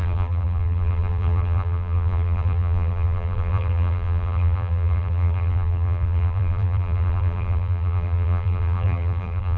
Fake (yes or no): yes